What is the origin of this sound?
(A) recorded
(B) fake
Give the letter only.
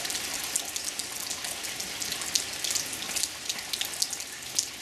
A